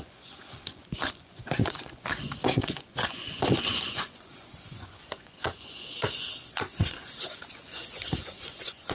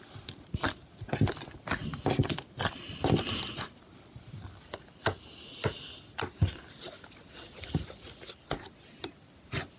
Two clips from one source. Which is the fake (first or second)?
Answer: first